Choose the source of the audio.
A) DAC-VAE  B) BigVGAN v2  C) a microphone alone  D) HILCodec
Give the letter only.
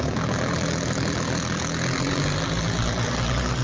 B